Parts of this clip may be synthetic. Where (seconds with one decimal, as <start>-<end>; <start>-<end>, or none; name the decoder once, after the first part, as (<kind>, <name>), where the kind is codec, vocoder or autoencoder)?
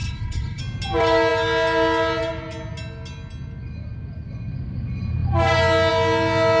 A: 0.0-0.6 (codec, HILCodec)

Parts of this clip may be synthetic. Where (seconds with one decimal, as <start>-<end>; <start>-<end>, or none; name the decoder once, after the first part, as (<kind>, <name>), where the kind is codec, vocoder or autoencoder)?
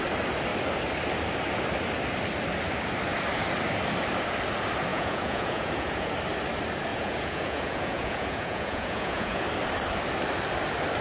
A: 4.9-6.1 (vocoder, Vocos); 6.9-9.4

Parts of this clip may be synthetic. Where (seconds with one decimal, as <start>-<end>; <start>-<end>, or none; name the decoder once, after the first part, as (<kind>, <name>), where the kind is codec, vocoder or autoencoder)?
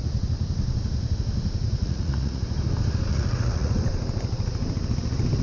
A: 1.8-2.4 (vocoder, Vocos); 3.1-3.7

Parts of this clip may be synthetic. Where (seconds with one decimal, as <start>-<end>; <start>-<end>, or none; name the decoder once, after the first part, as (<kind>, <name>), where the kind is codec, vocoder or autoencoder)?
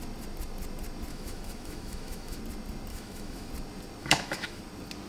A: 1.1-2.4 (autoencoder, DAC-VAE); 2.9-3.5; 4.0-4.6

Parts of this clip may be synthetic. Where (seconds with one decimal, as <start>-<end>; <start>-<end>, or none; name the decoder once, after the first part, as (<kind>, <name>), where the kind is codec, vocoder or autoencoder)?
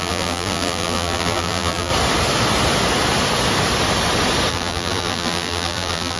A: 0.0-1.9 (vocoder, BigVGAN v2); 4.5-6.2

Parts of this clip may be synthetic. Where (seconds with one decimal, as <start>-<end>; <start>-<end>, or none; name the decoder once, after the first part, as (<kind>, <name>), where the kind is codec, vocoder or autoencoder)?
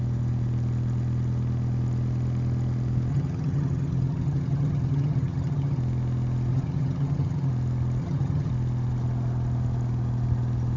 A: 3.1-5.8 (vocoder, HiFi-GAN); 6.5-7.5; 8.0-8.5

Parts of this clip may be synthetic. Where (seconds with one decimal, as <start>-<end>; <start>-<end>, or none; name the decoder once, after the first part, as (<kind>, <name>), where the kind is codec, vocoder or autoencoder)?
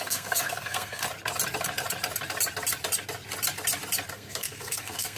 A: 0.0-1.0 (codec, SNAC); 4.1-5.2